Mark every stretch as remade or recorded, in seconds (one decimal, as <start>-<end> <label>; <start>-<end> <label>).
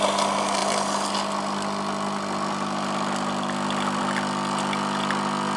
0.0-5.6 recorded